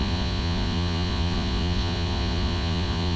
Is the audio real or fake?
fake